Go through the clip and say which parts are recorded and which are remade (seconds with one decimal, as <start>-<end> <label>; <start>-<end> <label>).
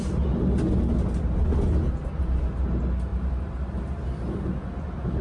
0.0-3.1 recorded; 3.1-4.2 remade; 4.2-5.2 recorded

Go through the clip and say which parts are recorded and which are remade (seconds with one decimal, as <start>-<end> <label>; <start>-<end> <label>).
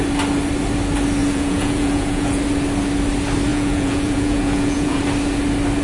0.0-1.2 recorded; 1.2-2.4 remade; 2.4-3.5 recorded; 3.5-5.0 remade; 5.0-5.8 recorded